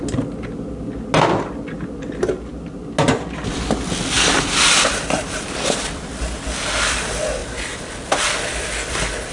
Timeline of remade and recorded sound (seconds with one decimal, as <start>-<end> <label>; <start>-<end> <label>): 0.0-9.3 recorded